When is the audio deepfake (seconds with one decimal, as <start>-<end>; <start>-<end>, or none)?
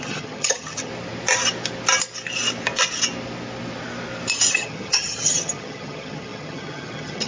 0.0-0.9; 4.5-7.3